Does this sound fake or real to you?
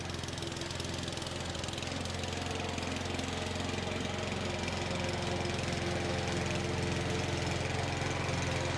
real